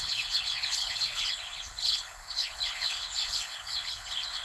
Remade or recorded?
remade